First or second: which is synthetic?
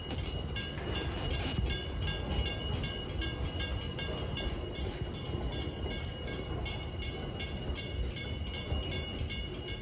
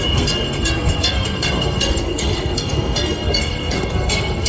second